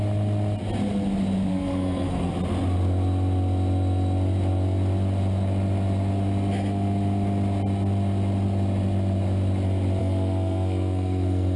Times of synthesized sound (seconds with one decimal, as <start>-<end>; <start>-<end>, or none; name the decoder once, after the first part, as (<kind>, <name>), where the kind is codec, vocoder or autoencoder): 1.5-2.3 (codec, SNAC); 10.0-11.6